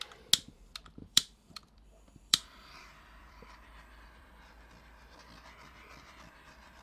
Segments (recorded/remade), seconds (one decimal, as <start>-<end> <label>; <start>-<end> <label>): 0.0-1.0 recorded; 1.0-4.4 remade; 4.4-6.8 recorded